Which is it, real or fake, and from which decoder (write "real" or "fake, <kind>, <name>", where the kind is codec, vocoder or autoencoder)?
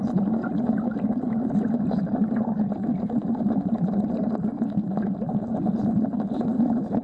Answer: real